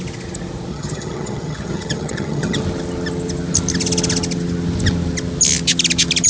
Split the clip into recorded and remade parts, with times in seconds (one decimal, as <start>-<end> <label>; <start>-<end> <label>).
0.0-0.7 recorded; 0.7-2.6 remade; 2.6-6.3 recorded